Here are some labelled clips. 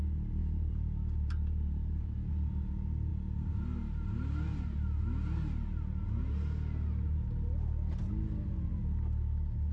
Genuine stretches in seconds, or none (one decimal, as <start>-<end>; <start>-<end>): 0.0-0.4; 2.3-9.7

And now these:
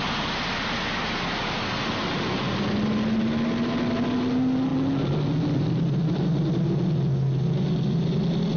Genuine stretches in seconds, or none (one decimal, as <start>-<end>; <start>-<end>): 0.0-8.6

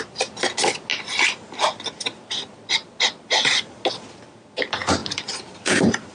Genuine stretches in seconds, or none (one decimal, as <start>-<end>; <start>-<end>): 0.0-5.0

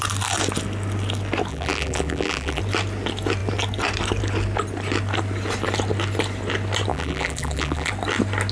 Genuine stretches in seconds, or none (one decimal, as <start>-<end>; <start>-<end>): 0.0-1.5; 2.6-6.9; 7.9-8.5